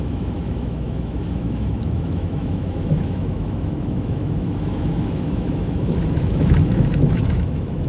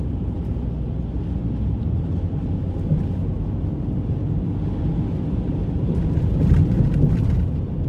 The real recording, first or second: second